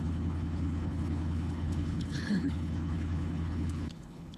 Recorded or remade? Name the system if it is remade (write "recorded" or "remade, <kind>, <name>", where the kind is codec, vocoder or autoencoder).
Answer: remade, codec, HILCodec